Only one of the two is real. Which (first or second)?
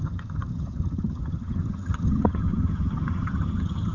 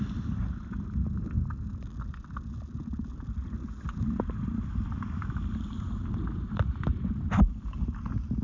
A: second